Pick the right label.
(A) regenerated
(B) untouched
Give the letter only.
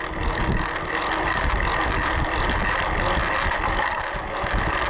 B